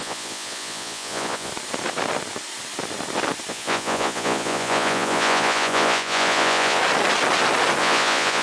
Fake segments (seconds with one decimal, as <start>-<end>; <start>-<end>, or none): 0.0-1.5; 3.5-6.8; 7.8-8.4